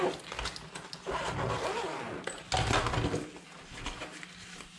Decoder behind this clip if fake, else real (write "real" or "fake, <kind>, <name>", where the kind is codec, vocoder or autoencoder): real